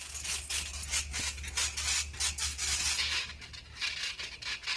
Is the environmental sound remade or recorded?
recorded